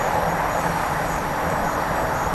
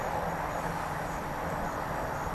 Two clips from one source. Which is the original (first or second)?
second